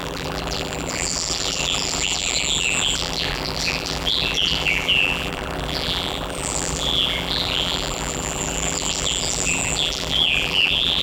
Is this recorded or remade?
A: remade